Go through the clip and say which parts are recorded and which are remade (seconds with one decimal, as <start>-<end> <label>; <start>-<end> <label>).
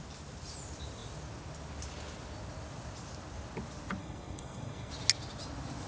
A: 0.0-4.0 recorded; 4.0-4.9 remade; 4.9-5.9 recorded